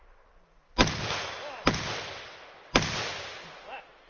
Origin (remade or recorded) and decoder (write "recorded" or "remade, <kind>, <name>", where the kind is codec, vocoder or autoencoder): recorded